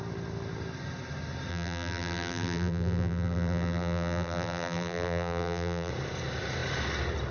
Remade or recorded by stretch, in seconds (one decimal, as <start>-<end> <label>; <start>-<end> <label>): 0.0-1.5 recorded; 1.5-5.9 remade; 5.9-7.3 recorded